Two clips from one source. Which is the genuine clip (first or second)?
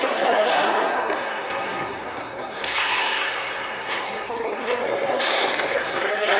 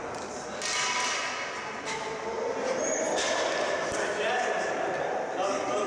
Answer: second